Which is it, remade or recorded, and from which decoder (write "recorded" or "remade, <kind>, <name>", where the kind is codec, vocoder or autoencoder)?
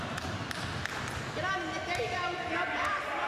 recorded